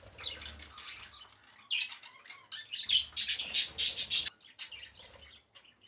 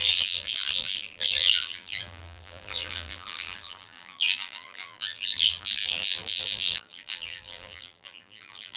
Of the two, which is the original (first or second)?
first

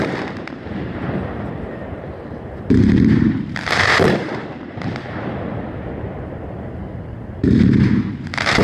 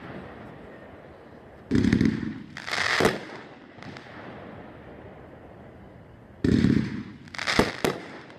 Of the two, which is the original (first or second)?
second